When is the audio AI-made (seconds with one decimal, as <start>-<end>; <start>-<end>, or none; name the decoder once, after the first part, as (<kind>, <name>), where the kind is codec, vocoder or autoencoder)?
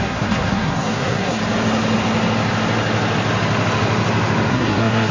0.0-1.4 (codec, SNAC); 4.5-5.1